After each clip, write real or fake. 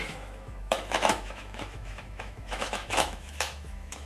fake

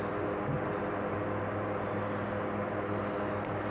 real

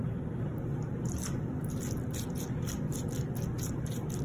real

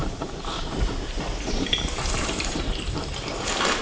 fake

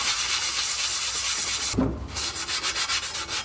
real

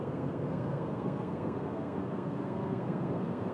fake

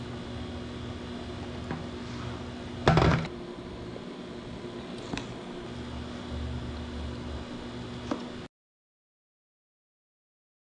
real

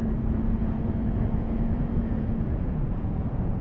fake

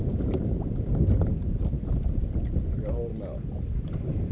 real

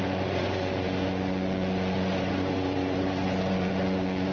fake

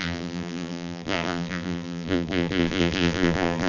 fake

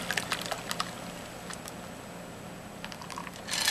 real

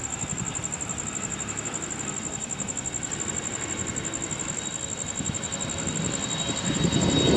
real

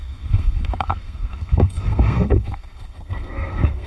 fake